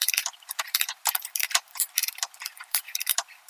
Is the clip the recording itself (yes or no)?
no